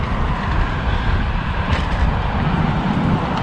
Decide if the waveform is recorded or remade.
recorded